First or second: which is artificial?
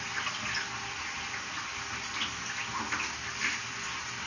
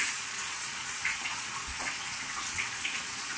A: second